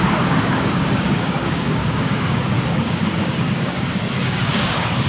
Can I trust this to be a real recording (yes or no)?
no